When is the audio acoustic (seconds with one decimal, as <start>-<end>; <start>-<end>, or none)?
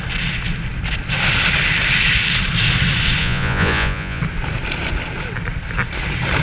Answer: 0.0-3.2; 4.2-6.4